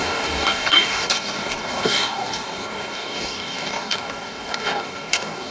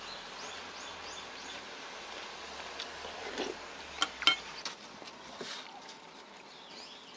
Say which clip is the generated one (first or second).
first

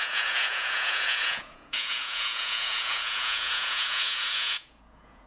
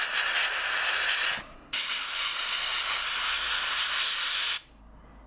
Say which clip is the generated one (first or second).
first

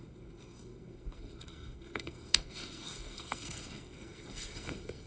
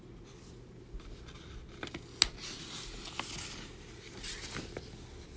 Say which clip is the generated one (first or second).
first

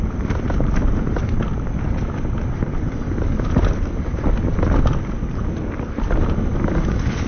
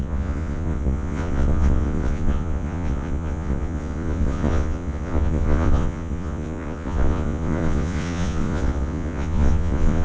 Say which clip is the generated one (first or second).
second